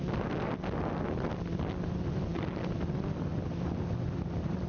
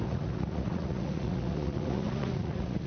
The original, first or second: first